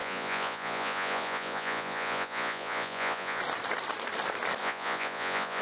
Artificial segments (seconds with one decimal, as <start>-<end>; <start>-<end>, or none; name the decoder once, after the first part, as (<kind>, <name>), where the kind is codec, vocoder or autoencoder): 0.0-3.4 (vocoder, Vocos); 4.6-5.6